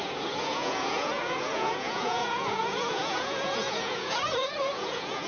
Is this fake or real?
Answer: fake